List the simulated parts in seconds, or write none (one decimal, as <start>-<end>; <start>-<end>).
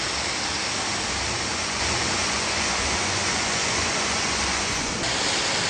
1.5-4.9